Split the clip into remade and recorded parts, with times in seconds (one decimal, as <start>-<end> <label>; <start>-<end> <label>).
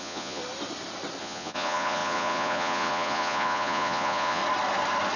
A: 0.0-0.4 remade; 0.4-1.2 recorded; 1.2-4.4 remade; 4.4-5.2 recorded